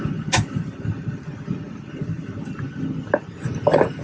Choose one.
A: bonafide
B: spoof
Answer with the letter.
A